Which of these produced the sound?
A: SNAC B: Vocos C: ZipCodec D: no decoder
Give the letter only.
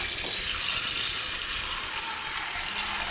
D